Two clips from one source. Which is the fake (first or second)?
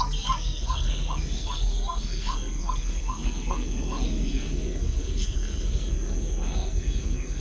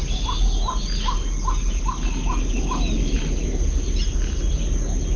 first